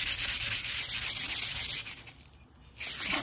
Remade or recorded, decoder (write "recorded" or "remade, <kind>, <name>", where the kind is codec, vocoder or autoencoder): recorded